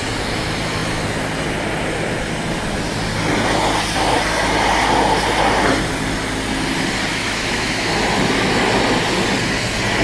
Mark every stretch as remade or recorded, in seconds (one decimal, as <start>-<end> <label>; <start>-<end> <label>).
0.0-7.1 recorded; 7.1-7.9 remade; 7.9-10.0 recorded